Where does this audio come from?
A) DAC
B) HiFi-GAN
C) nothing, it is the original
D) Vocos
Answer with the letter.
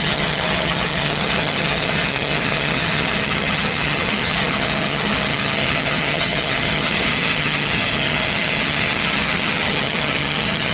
B